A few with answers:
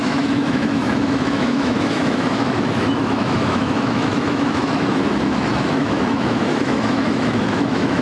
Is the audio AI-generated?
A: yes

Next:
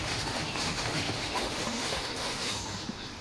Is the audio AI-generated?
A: yes